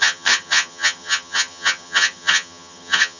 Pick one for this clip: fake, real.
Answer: fake